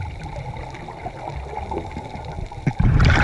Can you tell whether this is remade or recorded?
recorded